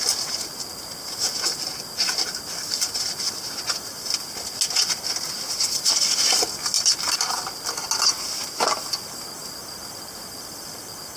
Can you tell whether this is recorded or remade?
recorded